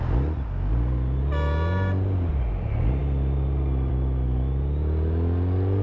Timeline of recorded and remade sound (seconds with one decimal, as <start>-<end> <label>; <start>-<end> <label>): 0.0-5.8 recorded